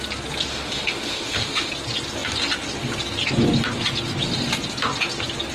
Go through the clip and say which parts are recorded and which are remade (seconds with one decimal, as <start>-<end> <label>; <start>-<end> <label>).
0.0-0.5 recorded; 0.5-1.7 remade; 1.7-5.5 recorded